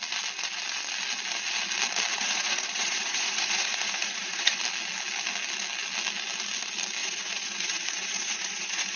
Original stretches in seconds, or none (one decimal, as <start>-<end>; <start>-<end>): 0.0-2.1; 4.6-7.0